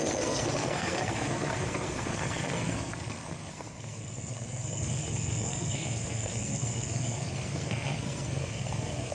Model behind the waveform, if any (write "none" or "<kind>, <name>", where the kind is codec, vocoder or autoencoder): codec, SNAC